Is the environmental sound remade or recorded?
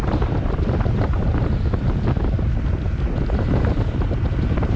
recorded